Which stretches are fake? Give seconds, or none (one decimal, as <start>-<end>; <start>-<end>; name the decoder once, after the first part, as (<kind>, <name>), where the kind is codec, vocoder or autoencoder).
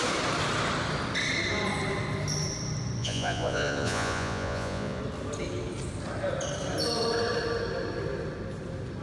3.0-5.0 (vocoder, Vocos)